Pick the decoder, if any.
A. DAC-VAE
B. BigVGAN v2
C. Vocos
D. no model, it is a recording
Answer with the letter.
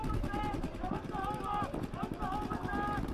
D